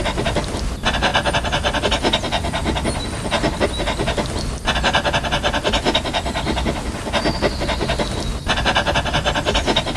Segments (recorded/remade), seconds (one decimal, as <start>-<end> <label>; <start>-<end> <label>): 0.0-10.0 recorded